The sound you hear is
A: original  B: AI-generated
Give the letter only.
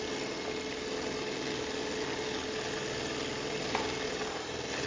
A